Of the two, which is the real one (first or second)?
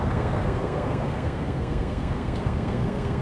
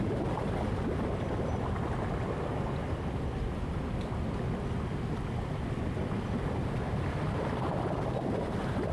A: second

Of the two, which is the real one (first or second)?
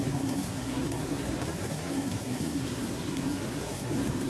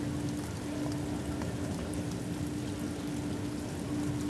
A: second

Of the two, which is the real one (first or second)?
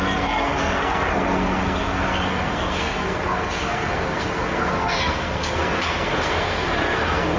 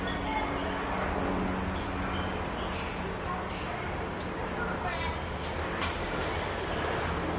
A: second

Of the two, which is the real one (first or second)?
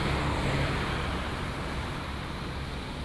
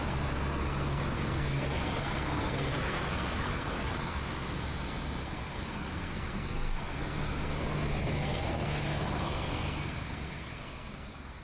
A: first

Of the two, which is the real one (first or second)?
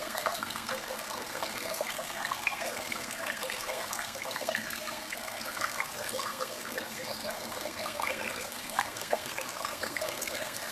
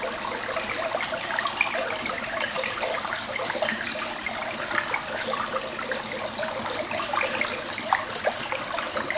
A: second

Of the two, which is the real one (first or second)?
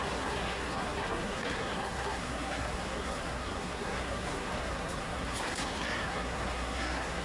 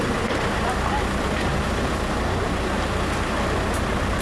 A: second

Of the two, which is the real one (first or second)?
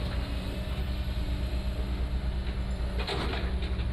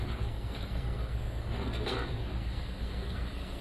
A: first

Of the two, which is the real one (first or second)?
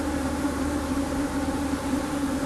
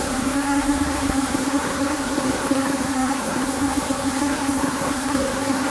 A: first